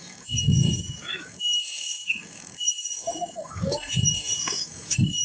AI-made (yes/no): yes